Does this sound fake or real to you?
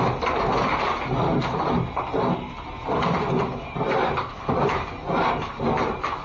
real